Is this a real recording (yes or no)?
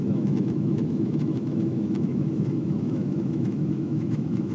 no